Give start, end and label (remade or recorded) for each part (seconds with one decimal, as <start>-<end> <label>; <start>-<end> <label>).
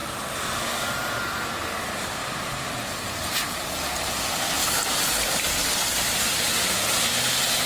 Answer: 0.0-2.2 recorded; 2.2-4.1 remade; 4.1-4.6 recorded; 4.6-7.0 remade; 7.0-7.7 recorded